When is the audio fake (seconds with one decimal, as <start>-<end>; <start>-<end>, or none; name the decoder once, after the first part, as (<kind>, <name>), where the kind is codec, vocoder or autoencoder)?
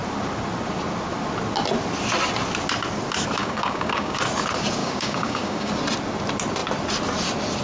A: 3.4-4.2 (codec, DAC); 4.8-5.7